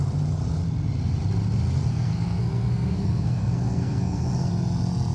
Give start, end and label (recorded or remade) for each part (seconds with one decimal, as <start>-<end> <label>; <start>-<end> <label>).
0.0-1.9 recorded; 1.9-4.5 remade; 4.5-5.1 recorded